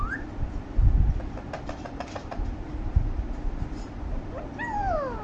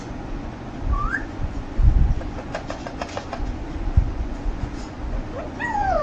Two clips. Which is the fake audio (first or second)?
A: second